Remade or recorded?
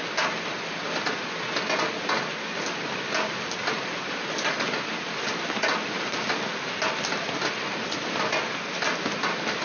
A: recorded